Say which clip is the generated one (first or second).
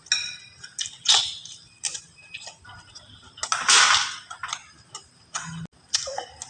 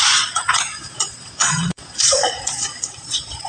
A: second